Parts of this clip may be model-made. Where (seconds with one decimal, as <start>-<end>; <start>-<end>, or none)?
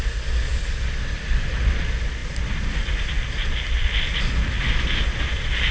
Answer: none